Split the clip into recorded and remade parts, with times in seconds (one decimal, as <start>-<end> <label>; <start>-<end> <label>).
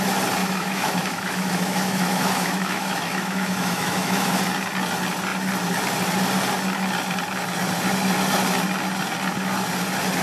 0.0-0.4 recorded; 0.4-4.4 remade; 4.4-10.2 recorded